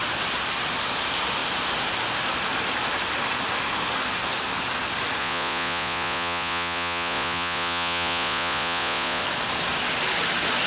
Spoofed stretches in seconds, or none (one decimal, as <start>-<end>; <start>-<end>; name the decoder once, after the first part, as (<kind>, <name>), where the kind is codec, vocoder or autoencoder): 5.2-9.2 (vocoder, Vocos)